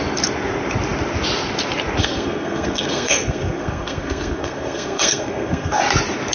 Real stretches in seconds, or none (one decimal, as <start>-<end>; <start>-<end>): 0.0-2.0; 5.8-6.3